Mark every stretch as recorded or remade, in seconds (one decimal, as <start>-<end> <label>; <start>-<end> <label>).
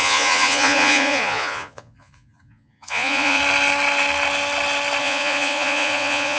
0.0-3.4 remade; 3.4-5.0 recorded; 5.0-6.4 remade